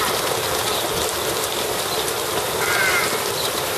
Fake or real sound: real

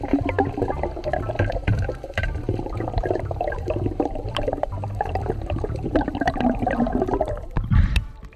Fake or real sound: fake